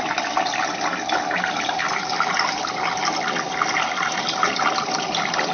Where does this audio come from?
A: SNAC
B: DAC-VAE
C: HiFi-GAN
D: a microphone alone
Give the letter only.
D